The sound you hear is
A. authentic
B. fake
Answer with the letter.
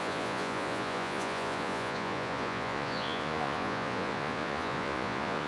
B